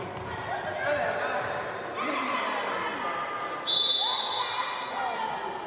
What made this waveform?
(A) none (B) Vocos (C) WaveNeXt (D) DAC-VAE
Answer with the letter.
A